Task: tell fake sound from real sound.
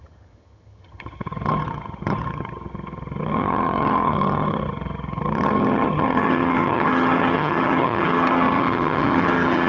fake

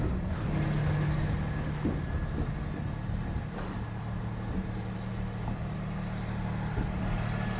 real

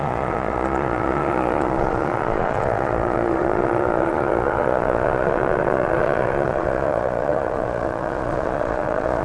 fake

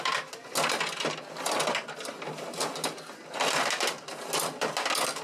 real